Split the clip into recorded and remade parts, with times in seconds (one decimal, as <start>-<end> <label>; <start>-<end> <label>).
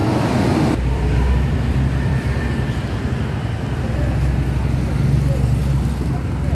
0.0-3.0 remade; 3.0-6.5 recorded